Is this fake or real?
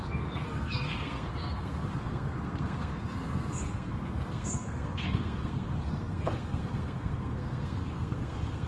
fake